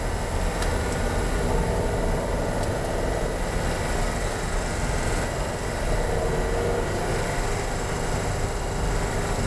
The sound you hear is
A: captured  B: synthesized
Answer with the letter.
A